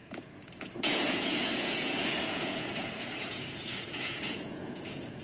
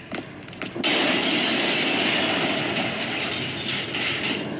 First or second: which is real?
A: second